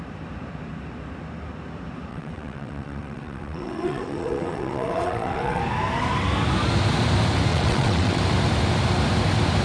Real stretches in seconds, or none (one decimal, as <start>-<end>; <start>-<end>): 0.0-2.1; 5.6-7.5; 8.2-9.6